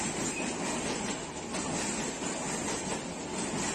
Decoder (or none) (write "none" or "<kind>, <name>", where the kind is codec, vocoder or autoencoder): none